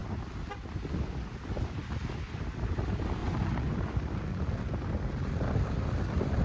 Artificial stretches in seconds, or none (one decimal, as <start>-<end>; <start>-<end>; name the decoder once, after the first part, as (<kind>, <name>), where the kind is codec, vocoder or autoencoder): 3.2-4.2 (vocoder, BigVGAN v2)